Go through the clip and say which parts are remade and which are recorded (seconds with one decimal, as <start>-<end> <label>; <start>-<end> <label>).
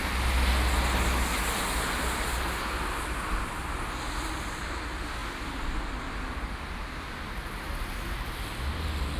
0.0-9.2 recorded